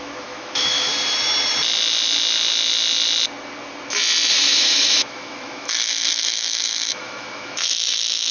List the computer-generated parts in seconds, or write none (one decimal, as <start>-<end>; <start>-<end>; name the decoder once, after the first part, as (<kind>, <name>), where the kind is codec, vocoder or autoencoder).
0.0-0.9 (autoencoder, DAC-VAE); 4.3-8.3